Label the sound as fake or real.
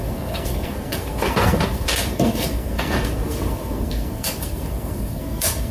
fake